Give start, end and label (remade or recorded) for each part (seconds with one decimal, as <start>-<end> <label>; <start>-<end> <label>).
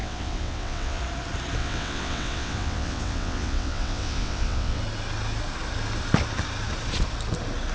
0.0-1.0 remade; 1.0-1.6 recorded; 1.6-4.8 remade; 4.8-7.7 recorded